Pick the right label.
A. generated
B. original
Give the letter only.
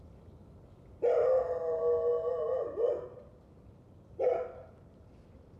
B